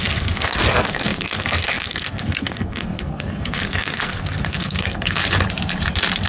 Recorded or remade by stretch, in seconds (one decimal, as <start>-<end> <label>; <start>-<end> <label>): 0.0-5.2 remade; 5.2-6.3 recorded